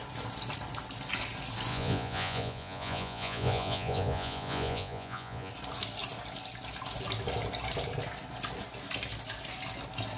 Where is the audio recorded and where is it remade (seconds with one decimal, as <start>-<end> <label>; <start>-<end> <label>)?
0.0-1.7 recorded; 1.7-5.5 remade; 5.5-10.2 recorded